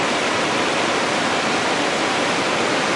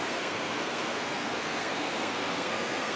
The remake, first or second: second